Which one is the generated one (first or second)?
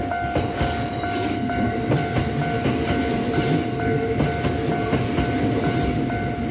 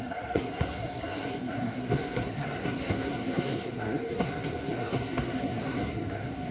second